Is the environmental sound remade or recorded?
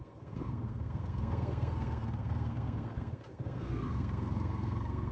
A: remade